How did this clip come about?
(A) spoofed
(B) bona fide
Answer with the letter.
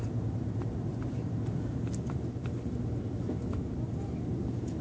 A